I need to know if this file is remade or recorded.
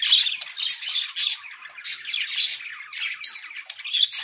recorded